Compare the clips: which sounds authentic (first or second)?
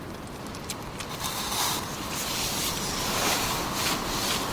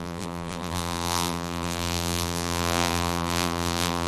first